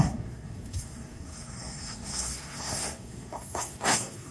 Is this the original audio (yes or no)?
no